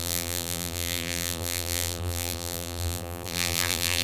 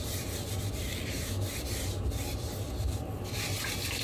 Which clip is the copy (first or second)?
first